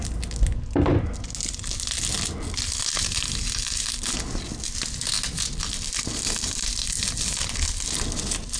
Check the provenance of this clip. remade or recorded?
recorded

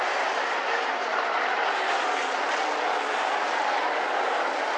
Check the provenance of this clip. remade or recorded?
recorded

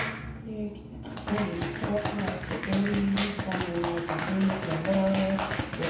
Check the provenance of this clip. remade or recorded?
recorded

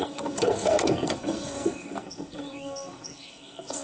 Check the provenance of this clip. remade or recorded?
remade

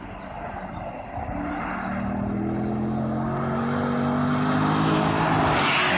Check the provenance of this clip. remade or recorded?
recorded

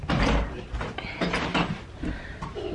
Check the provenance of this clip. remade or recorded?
recorded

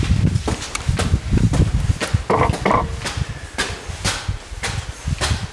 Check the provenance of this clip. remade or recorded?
recorded